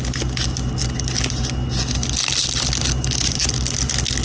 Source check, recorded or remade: recorded